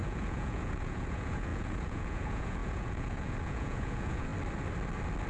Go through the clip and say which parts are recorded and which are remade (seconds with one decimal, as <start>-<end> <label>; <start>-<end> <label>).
0.0-4.3 remade; 4.3-5.3 recorded

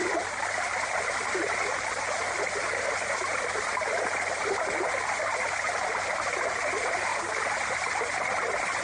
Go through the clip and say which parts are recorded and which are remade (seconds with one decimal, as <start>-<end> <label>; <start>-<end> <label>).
0.0-8.8 recorded

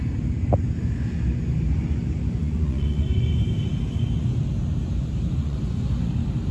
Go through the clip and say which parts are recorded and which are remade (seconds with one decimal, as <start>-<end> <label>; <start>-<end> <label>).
0.0-2.4 recorded; 2.4-3.2 remade; 3.2-5.4 recorded; 5.4-6.0 remade; 6.0-6.5 recorded